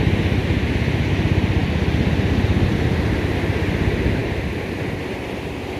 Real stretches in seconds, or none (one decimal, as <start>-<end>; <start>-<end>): 0.0-5.8